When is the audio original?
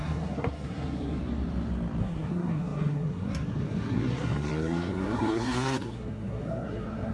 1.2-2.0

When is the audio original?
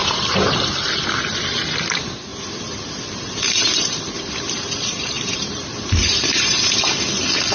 0.7-2.3; 6.8-7.5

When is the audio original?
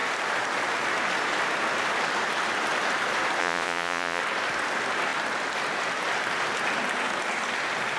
0.0-3.4; 4.2-8.0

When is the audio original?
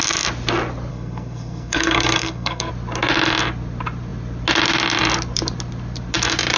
0.0-0.9; 2.7-6.6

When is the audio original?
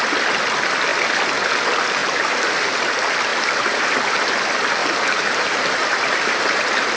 0.0-2.0; 2.8-3.3; 3.8-4.8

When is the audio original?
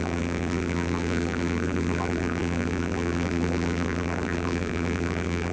none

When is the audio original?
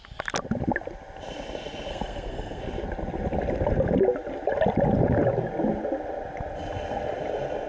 0.0-1.9; 2.6-7.7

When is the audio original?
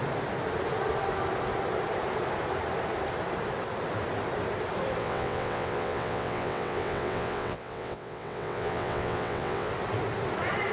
0.0-5.0; 9.7-10.7